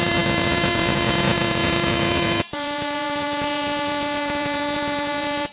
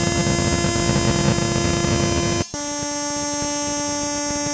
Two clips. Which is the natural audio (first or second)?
second